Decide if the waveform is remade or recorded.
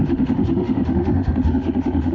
remade